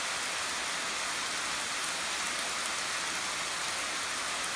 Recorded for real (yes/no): yes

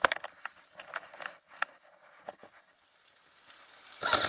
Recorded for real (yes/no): yes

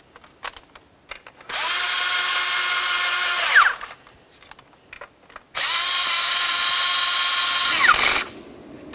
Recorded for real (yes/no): yes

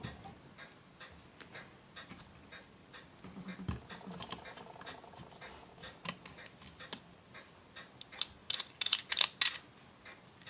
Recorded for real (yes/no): yes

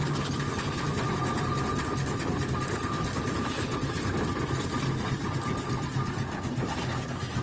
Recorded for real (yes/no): yes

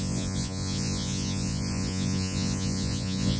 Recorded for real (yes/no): no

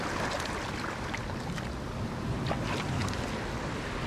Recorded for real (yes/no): yes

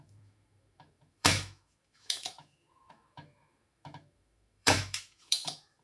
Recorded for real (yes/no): no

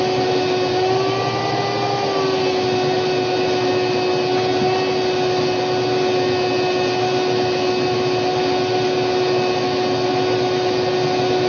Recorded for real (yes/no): yes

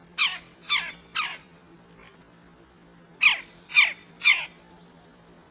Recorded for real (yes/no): yes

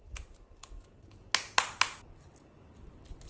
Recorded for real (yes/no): yes